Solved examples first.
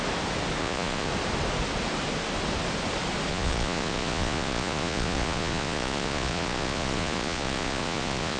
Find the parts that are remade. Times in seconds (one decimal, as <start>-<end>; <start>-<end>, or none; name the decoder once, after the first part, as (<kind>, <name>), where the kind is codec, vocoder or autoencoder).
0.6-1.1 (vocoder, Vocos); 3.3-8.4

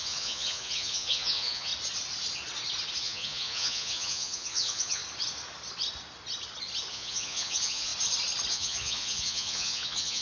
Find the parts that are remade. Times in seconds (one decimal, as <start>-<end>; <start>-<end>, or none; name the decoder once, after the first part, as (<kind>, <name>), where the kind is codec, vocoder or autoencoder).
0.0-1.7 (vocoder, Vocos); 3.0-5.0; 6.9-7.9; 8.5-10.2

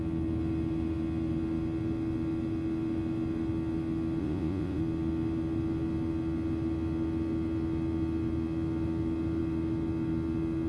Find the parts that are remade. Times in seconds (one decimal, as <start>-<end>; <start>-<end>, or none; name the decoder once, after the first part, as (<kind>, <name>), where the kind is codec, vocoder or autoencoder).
4.2-4.8 (vocoder, Vocos)

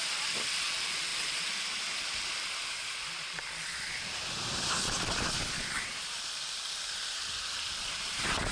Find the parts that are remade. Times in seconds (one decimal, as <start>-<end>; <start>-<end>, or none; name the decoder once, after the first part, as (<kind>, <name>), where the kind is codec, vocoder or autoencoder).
0.0-1.1 (vocoder, BigVGAN v2); 6.2-8.5

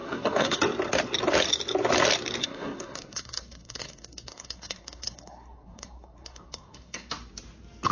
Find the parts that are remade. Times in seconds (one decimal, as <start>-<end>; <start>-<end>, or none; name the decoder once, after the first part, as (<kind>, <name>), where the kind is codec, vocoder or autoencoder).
0.0-0.6 (codec, SNAC); 2.4-7.1

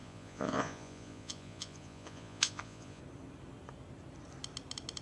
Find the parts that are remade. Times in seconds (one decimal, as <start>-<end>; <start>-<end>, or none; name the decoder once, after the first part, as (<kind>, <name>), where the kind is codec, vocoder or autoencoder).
0.0-3.0 (vocoder, Vocos)